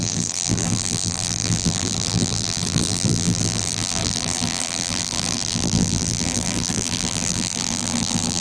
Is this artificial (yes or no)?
yes